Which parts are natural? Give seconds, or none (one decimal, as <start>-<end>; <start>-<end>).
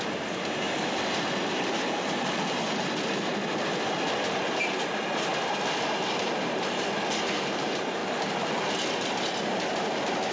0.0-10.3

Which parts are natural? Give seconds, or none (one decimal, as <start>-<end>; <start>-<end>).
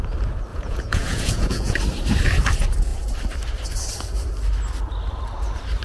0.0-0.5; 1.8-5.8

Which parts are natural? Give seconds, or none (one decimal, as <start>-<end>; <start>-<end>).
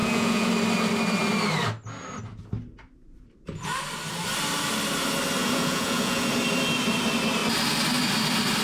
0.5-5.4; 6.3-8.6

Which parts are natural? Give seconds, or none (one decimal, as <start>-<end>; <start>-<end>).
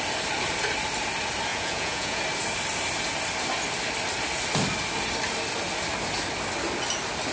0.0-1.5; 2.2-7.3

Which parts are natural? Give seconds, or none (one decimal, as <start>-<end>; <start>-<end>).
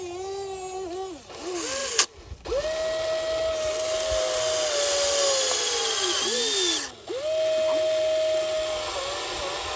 0.0-9.8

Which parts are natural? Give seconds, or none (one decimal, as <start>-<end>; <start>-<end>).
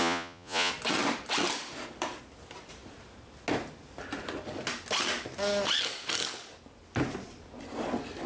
0.7-8.3